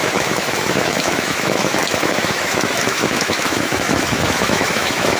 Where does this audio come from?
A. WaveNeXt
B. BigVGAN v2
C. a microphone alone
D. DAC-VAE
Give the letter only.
D